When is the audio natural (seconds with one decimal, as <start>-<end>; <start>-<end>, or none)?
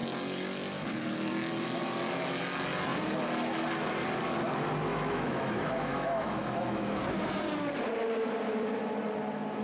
0.0-4.9; 7.0-9.6